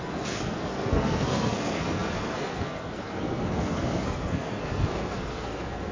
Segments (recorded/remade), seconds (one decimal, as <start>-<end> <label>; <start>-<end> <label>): 0.0-5.9 remade